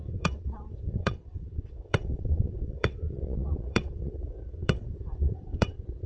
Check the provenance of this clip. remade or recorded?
remade